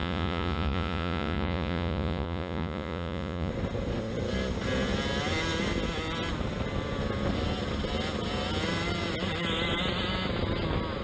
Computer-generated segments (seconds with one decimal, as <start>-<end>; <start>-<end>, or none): 0.0-3.5